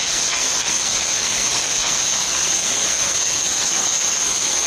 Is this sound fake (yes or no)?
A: yes